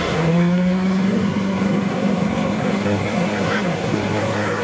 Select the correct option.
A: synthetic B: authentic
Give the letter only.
A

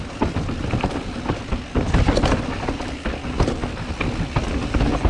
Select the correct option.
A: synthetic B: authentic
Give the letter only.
B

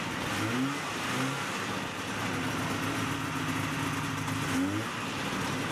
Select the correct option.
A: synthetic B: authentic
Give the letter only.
B